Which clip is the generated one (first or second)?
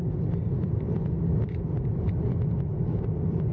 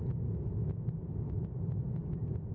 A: first